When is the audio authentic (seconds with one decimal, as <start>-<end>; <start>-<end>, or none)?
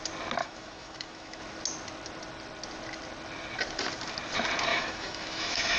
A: 0.0-0.4; 1.4-4.7